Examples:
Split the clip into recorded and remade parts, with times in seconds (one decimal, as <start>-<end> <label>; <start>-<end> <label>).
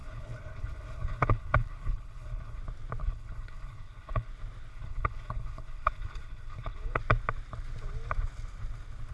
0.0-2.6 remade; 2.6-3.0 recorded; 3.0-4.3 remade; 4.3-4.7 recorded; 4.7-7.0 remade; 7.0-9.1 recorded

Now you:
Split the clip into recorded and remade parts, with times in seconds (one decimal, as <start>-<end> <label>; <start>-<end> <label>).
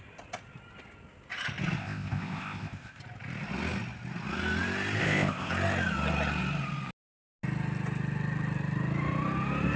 0.0-1.8 recorded; 1.8-3.0 remade; 3.0-5.0 recorded; 5.0-5.5 remade; 5.5-9.8 recorded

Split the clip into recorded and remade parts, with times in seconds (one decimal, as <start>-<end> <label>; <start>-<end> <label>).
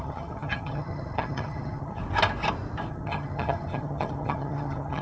0.0-2.0 remade; 2.0-2.9 recorded; 2.9-5.0 remade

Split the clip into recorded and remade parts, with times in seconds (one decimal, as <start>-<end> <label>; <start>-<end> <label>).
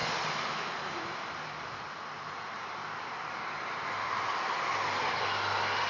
0.0-3.5 remade; 3.5-5.9 recorded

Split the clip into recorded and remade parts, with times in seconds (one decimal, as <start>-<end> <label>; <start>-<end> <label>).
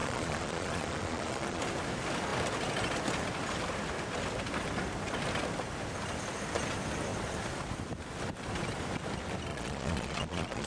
0.0-1.6 remade; 1.6-9.5 recorded; 9.5-10.7 remade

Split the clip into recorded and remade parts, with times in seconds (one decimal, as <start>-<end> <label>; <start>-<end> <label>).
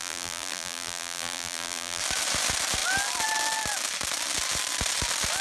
0.0-2.0 remade; 2.0-5.4 recorded